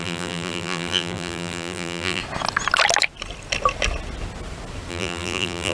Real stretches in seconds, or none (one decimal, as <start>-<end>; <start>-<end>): 2.2-4.9